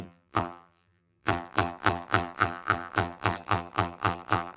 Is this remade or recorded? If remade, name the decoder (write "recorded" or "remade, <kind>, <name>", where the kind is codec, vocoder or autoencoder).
remade, vocoder, BigVGAN v2